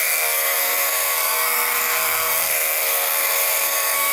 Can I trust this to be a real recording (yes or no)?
no